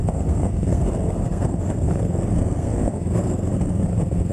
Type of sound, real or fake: fake